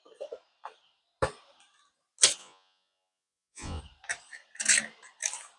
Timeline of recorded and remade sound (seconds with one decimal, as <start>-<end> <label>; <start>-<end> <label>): 0.0-2.4 recorded; 2.4-3.8 remade; 3.8-5.6 recorded